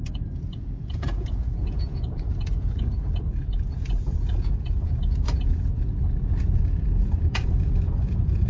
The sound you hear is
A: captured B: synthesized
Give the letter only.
B